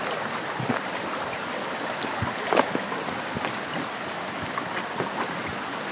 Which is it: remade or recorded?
recorded